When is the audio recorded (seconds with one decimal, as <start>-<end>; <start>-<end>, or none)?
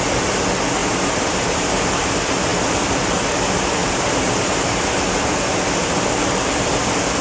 0.0-0.8; 1.7-3.8; 4.8-7.2